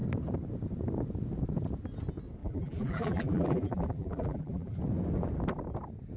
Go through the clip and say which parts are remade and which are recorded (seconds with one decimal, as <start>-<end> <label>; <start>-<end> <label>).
0.0-2.4 recorded; 2.4-4.8 remade; 4.8-6.2 recorded